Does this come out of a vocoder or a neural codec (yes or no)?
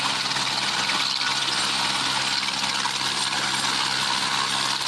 no